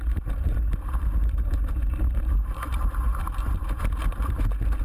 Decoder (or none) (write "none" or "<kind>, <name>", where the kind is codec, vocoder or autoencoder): vocoder, BigVGAN v2